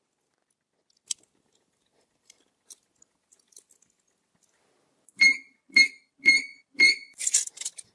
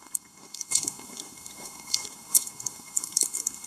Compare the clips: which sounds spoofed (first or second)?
second